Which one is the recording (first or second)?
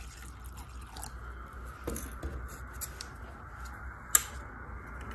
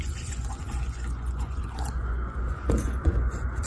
first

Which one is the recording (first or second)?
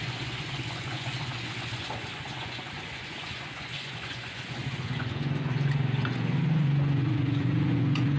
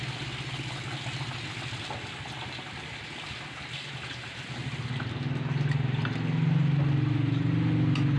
second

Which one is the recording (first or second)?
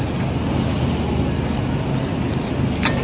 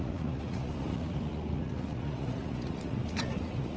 first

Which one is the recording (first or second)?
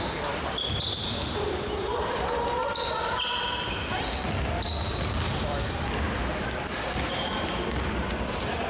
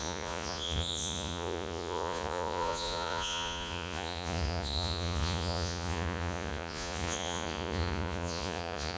first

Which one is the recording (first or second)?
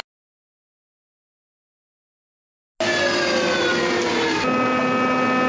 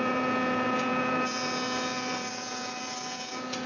first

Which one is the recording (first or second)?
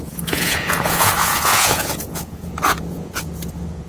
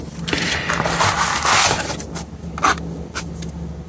second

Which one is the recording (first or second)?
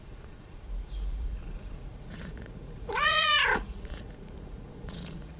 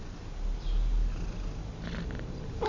second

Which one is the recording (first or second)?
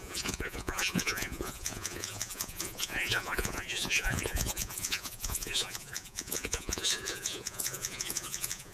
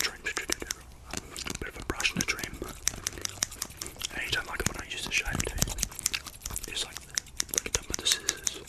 second